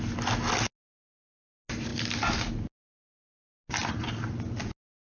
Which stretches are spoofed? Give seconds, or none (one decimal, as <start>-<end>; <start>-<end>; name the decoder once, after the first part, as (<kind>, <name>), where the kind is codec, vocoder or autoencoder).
none